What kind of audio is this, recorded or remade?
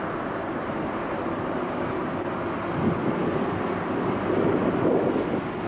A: recorded